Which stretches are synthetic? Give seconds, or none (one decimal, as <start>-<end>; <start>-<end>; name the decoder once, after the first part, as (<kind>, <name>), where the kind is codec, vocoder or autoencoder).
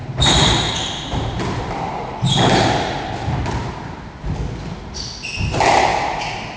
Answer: 0.0-3.1 (vocoder, BigVGAN v2)